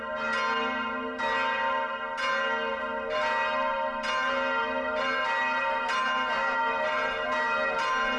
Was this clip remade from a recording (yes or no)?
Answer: no